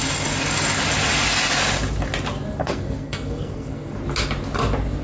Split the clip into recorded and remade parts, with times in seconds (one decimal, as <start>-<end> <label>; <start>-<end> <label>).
0.0-2.6 recorded; 2.6-4.0 remade; 4.0-5.0 recorded